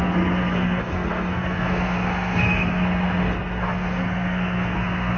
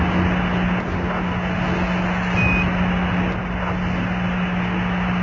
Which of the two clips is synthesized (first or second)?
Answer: first